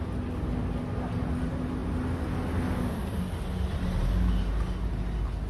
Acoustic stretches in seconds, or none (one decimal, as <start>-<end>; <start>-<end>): 0.0-5.5